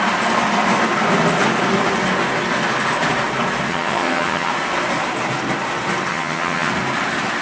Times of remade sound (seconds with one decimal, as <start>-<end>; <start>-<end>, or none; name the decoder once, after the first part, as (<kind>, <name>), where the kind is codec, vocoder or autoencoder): 3.7-4.5 (vocoder, HiFi-GAN); 6.1-6.7